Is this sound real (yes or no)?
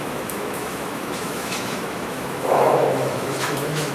no